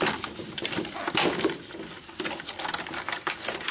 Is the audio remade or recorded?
recorded